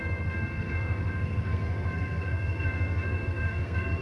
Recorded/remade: remade